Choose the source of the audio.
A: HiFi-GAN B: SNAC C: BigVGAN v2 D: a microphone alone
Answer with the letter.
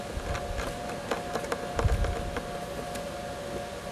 D